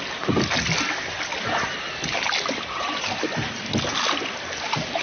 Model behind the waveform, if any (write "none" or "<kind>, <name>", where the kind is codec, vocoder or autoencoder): none